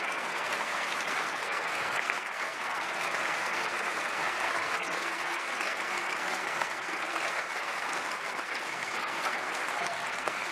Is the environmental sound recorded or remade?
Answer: remade